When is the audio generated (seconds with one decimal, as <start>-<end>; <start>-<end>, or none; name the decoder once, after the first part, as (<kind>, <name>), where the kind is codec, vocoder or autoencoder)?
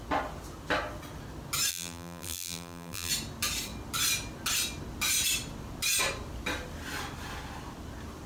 1.7-3.1 (vocoder, BigVGAN v2)